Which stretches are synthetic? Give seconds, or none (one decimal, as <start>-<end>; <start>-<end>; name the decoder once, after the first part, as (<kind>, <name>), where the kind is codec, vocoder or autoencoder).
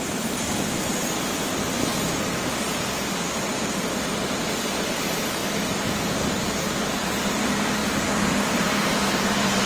0.0-1.9 (vocoder, BigVGAN v2); 2.5-5.4; 7.0-7.8; 8.5-9.7